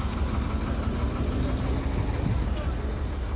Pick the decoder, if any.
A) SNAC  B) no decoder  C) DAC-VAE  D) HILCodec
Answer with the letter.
B